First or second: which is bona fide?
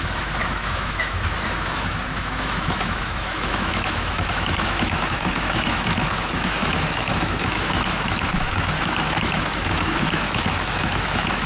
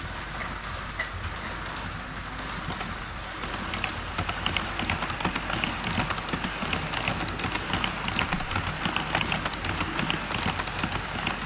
second